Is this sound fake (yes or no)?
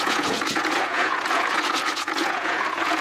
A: yes